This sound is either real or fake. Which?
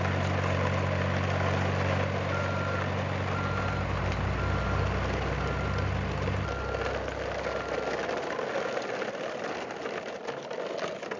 real